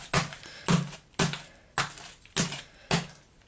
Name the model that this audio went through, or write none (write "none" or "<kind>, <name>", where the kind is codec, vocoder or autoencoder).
none